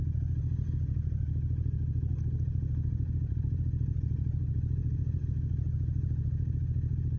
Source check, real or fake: real